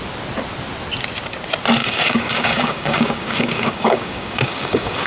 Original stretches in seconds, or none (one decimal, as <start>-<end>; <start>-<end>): 0.0-1.8